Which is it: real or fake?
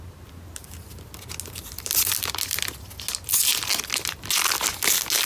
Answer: real